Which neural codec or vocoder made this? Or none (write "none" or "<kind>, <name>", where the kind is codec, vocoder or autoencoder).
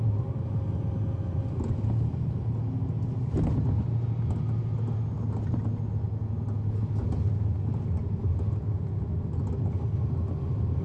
none